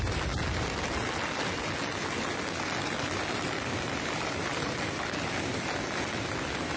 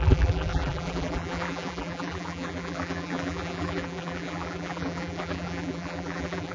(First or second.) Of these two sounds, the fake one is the second